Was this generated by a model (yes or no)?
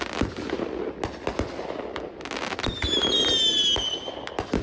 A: no